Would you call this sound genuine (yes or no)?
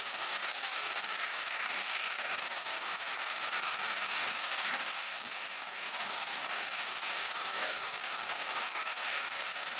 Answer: no